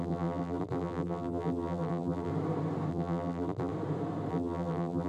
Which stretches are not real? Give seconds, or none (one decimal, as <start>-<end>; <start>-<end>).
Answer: 0.0-2.3; 2.9-3.7; 4.3-5.1